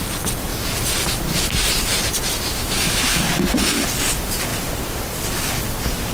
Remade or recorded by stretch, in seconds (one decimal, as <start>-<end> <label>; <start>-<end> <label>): 0.0-2.5 recorded; 2.5-3.2 remade; 3.2-6.1 recorded